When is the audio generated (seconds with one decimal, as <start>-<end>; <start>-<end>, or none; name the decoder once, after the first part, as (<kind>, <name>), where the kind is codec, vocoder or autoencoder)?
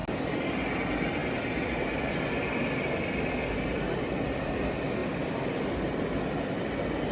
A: none